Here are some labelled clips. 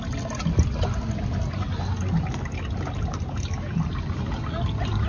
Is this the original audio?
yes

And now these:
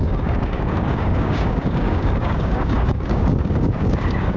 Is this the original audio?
no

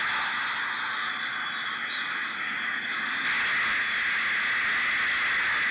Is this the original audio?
yes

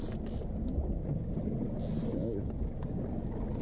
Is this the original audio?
yes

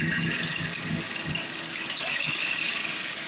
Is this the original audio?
no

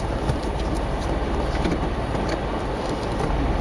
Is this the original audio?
no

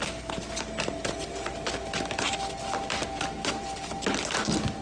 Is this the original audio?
yes